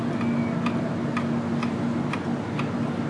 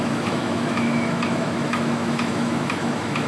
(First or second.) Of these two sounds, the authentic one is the first